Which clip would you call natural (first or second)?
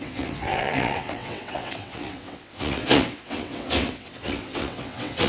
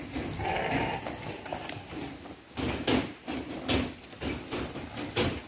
second